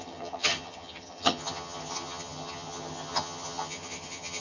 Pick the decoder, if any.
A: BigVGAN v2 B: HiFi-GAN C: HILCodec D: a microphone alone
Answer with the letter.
B